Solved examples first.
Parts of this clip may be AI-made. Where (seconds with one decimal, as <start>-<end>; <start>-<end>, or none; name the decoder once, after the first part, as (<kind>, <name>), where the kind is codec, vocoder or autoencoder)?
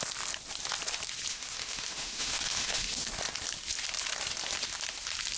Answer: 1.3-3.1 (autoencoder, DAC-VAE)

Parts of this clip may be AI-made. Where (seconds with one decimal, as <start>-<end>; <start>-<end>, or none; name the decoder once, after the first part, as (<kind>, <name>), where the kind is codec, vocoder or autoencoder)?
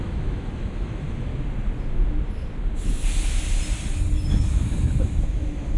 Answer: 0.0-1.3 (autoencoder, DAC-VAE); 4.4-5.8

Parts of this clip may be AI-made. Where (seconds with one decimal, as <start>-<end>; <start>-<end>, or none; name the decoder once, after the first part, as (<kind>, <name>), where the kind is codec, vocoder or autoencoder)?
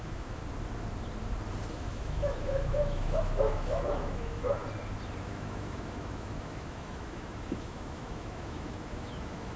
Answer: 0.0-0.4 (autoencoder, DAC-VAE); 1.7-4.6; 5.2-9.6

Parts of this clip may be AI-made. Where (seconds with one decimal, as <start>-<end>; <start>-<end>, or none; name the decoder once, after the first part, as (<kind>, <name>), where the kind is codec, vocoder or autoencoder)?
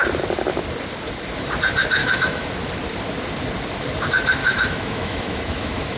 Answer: 2.0-2.5 (autoencoder, DAC-VAE); 4.4-6.0